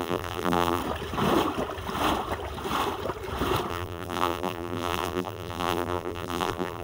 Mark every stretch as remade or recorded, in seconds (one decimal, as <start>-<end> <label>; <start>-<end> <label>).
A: 0.0-0.8 remade; 0.8-3.7 recorded; 3.7-6.8 remade